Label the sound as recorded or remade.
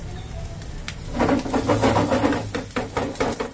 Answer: recorded